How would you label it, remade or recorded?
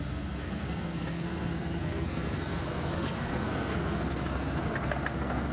remade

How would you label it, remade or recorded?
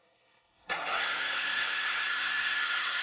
remade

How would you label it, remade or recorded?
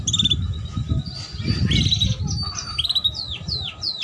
recorded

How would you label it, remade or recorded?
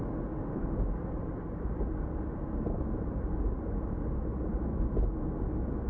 recorded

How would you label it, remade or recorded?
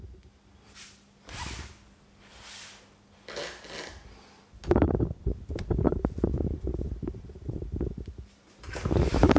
recorded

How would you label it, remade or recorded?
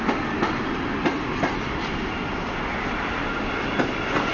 recorded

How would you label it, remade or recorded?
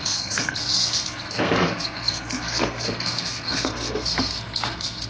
remade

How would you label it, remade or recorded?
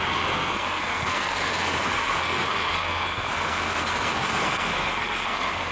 remade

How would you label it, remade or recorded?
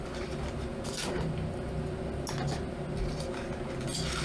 recorded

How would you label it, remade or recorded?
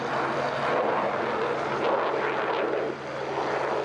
recorded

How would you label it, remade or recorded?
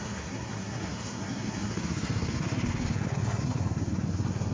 remade